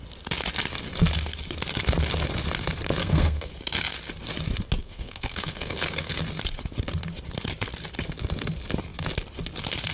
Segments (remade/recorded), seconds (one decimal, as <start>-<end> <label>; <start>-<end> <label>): 0.0-3.0 recorded; 3.0-3.5 remade; 3.5-4.8 recorded; 4.8-6.2 remade; 6.2-9.9 recorded

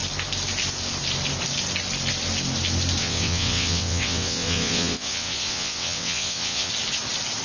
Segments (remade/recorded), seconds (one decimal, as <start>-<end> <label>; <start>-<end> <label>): 0.0-3.0 recorded; 3.0-6.7 remade; 6.7-7.4 recorded

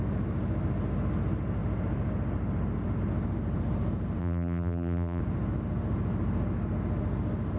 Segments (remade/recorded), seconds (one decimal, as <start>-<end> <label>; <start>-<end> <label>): 0.0-4.2 recorded; 4.2-5.2 remade; 5.2-7.6 recorded

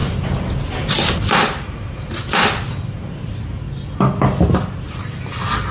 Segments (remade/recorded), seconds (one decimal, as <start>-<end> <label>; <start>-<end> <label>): 0.0-5.7 recorded

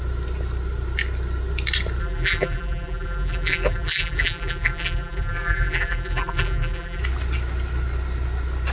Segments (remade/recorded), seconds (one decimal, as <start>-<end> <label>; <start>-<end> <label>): 0.0-2.0 recorded; 2.0-7.0 remade; 7.0-8.7 recorded